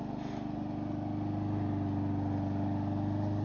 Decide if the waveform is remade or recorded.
recorded